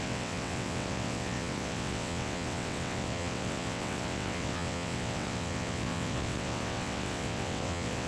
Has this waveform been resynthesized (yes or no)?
yes